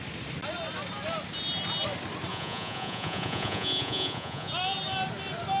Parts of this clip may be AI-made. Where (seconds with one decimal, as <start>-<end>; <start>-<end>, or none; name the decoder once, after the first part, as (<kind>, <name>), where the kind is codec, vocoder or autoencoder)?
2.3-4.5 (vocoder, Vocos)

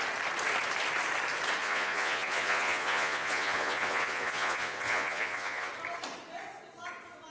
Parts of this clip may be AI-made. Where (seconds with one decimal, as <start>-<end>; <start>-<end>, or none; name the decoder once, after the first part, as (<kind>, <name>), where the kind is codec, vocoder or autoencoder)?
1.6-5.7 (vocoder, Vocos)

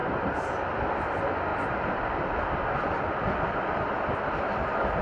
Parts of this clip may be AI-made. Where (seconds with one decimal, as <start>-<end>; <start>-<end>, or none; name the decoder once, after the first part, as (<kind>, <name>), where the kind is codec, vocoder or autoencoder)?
none